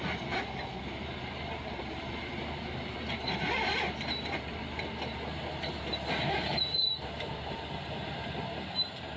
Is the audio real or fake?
fake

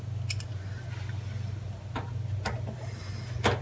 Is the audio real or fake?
real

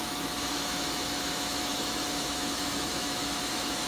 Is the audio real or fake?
fake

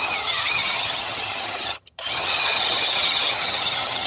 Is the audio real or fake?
fake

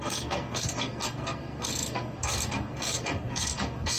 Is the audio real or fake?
fake